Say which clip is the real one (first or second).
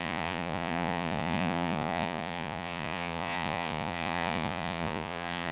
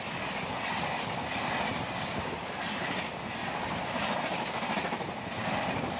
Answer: second